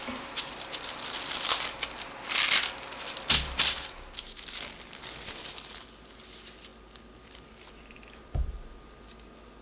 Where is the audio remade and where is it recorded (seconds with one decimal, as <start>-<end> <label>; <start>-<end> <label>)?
0.0-9.6 recorded